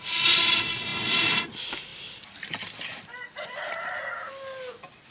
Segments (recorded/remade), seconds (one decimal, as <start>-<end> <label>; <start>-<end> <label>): 0.0-5.1 recorded